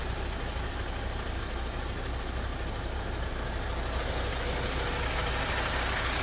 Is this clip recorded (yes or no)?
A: yes